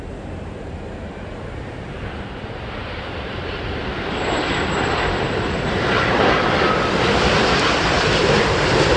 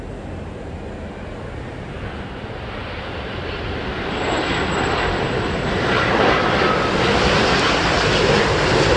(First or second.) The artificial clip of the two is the first